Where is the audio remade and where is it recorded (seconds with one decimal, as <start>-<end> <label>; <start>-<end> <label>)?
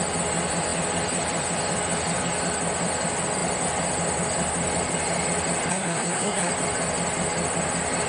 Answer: 0.0-5.7 recorded; 5.7-6.5 remade; 6.5-8.1 recorded